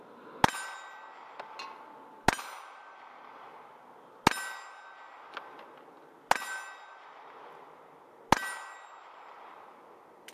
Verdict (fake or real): real